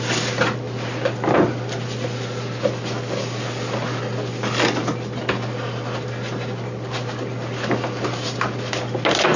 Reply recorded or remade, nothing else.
recorded